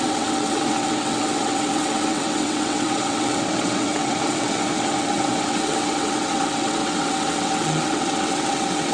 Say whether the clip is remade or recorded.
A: remade